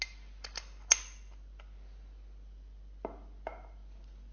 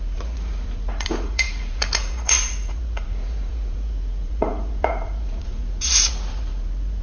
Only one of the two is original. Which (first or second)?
first